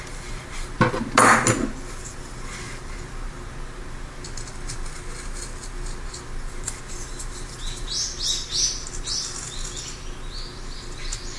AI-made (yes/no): no